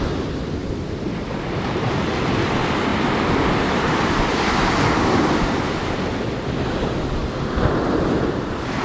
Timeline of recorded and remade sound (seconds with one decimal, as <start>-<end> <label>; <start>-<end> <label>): 0.0-0.6 recorded; 0.6-1.8 remade; 1.8-2.9 recorded; 2.9-6.6 remade; 6.6-8.8 recorded